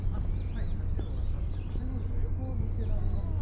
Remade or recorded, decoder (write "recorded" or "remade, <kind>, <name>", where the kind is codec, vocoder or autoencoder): recorded